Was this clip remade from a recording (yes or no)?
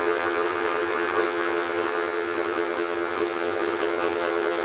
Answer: yes